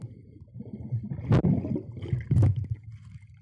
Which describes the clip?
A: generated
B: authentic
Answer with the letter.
B